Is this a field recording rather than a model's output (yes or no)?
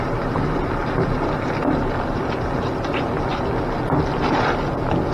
yes